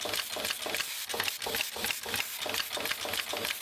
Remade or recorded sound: recorded